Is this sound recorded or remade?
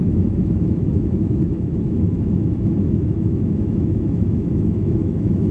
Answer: remade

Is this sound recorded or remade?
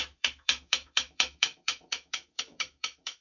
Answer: remade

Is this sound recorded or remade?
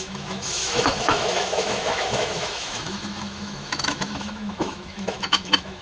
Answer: remade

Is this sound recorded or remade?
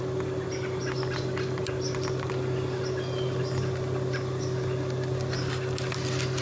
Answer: recorded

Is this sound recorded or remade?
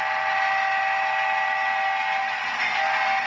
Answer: recorded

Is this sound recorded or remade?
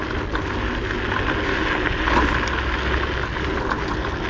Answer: recorded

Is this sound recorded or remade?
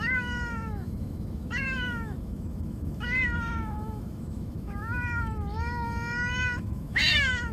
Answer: remade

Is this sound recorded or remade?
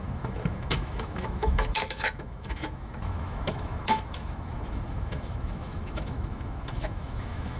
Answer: remade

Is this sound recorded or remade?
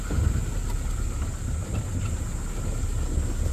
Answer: recorded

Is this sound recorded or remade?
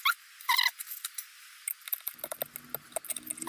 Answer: recorded